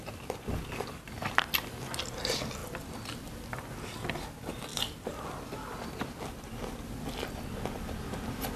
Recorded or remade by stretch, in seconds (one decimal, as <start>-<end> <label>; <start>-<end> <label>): 0.0-8.6 recorded